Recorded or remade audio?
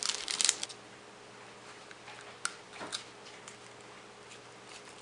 recorded